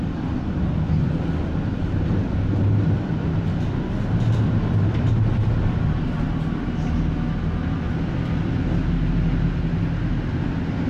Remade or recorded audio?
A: recorded